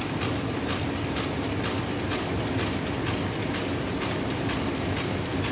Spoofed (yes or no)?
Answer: no